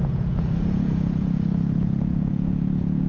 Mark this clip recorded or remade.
remade